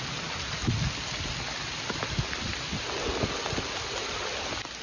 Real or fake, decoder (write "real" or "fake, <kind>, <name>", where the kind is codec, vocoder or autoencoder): real